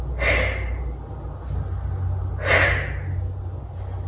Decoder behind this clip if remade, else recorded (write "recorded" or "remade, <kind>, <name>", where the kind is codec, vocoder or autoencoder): recorded